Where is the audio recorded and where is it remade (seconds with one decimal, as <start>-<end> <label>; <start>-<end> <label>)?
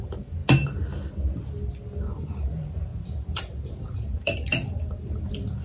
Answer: 0.0-0.4 remade; 0.4-2.0 recorded; 2.0-5.6 remade